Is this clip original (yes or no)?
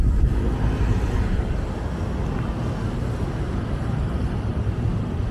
yes